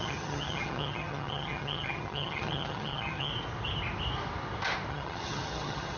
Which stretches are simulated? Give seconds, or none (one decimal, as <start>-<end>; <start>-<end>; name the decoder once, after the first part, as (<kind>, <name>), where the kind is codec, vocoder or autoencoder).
0.0-3.3 (vocoder, HiFi-GAN); 4.9-6.0